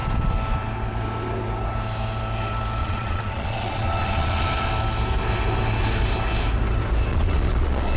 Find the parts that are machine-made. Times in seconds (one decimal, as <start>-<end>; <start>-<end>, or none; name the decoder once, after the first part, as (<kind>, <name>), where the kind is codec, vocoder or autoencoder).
2.8-4.7 (vocoder, Vocos); 7.1-8.0